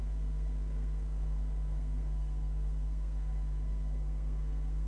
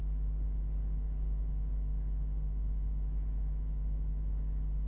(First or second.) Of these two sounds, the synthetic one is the first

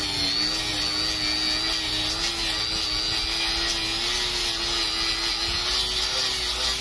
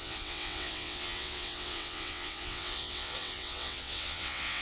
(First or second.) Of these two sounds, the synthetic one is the second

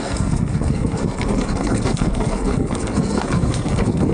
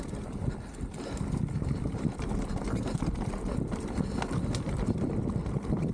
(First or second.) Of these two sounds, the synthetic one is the first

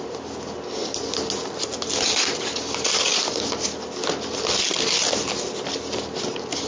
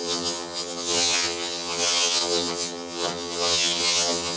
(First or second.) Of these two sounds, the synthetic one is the second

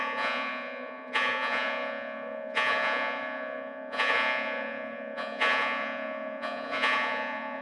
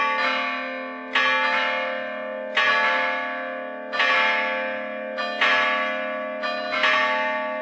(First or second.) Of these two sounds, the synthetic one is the first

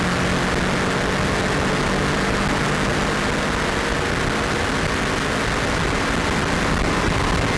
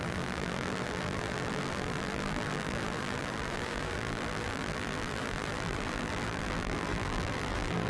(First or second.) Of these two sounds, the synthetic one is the second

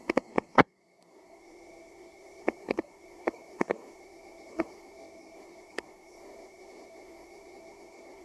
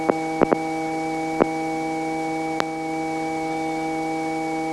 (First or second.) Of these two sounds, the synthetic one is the first